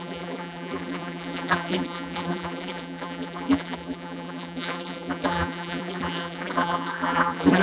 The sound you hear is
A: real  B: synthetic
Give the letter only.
B